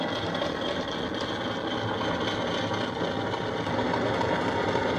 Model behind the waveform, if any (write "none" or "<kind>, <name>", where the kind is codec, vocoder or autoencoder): none